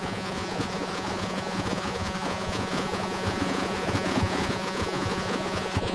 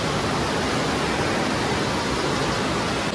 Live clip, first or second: second